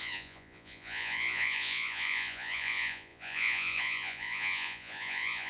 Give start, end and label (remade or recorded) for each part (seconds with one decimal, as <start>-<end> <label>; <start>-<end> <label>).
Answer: 0.0-5.5 remade